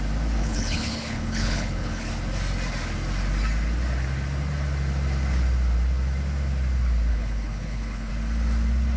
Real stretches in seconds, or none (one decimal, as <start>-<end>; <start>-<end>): 0.0-0.4; 2.1-7.1; 8.1-9.0